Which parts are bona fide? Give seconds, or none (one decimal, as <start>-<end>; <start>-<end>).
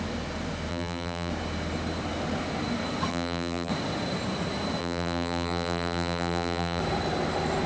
0.0-0.7; 1.3-3.1; 3.7-4.8; 6.8-7.7